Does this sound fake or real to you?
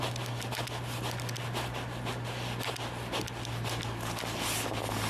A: real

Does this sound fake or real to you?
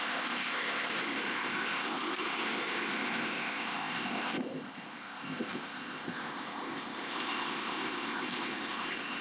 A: fake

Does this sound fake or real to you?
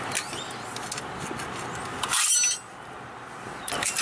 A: real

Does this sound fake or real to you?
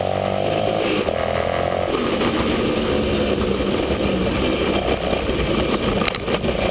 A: real